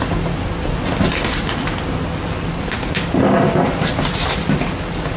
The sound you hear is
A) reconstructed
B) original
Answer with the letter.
B